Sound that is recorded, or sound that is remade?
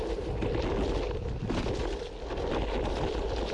recorded